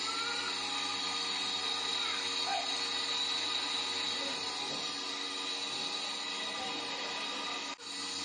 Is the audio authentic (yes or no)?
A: yes